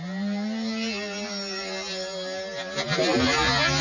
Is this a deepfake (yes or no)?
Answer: no